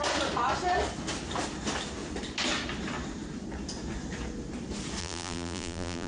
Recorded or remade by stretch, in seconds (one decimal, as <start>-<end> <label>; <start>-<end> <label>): 0.0-5.0 recorded; 5.0-6.1 remade